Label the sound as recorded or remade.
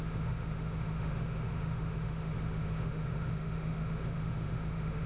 remade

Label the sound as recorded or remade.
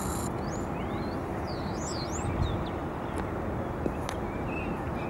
recorded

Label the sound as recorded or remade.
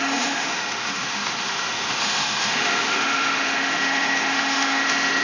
remade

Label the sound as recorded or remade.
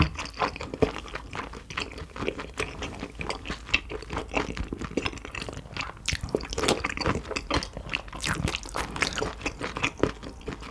recorded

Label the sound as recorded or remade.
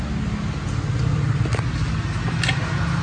recorded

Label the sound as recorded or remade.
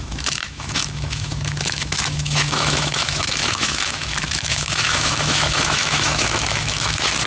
remade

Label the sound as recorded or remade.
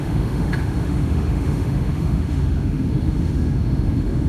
remade